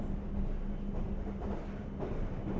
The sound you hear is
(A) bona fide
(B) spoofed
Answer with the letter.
A